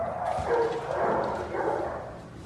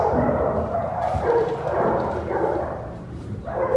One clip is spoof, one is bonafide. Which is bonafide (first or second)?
first